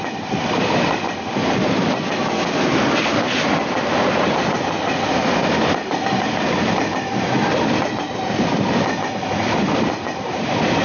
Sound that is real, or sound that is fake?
real